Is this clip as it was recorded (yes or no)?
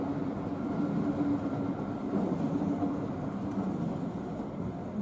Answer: yes